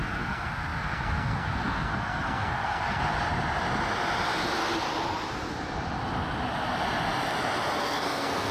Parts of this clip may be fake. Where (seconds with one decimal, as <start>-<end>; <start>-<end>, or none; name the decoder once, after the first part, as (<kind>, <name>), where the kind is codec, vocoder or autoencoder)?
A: 0.0-3.0 (codec, SNAC); 7.8-8.5